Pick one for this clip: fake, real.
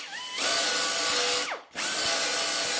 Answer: real